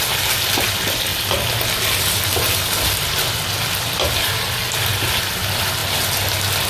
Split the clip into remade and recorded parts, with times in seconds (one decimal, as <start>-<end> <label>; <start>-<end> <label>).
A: 0.0-6.7 recorded